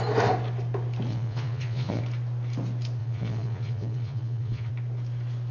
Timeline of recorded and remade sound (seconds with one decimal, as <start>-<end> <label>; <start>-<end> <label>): 0.0-1.1 recorded; 1.1-2.0 remade; 2.0-3.0 recorded; 3.0-4.7 remade; 4.7-5.5 recorded